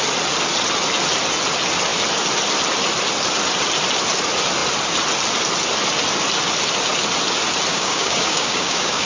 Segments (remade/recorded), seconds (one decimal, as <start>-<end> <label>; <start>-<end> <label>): 0.0-7.7 recorded; 7.7-9.1 remade